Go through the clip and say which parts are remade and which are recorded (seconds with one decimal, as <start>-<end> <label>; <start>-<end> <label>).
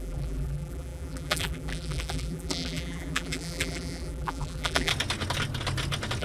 0.0-4.9 remade; 4.9-6.2 recorded